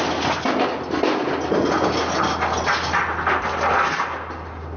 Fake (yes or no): no